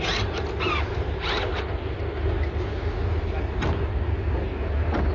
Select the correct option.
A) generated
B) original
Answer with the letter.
B